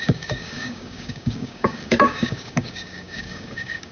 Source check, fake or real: fake